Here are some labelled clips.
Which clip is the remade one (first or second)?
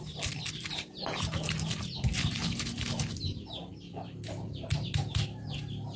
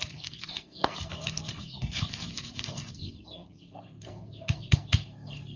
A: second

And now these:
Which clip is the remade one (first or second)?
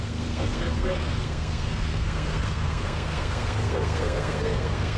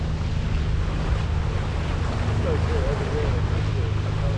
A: first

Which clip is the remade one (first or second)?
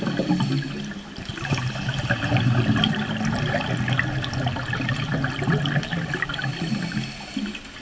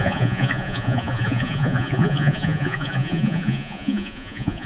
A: second